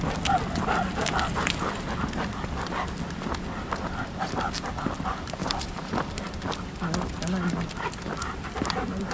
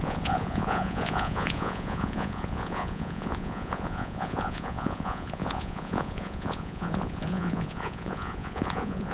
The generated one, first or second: second